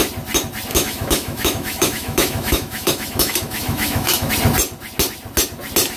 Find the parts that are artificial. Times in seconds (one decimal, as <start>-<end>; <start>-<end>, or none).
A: 0.7-4.3